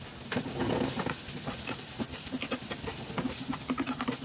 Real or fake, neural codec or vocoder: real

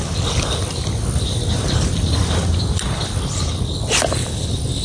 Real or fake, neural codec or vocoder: real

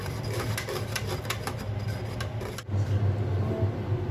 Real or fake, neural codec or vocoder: real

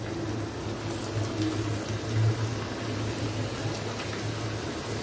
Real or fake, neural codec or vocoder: real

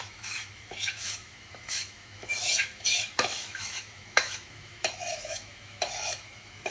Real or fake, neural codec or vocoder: fake, autoencoder, DAC-VAE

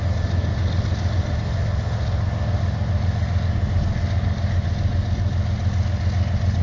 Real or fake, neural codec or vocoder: real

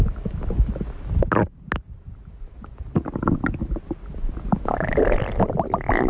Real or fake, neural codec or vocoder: real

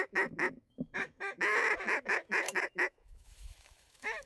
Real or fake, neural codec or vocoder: fake, autoencoder, DAC-VAE